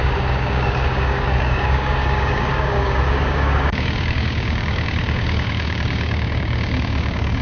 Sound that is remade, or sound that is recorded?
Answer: remade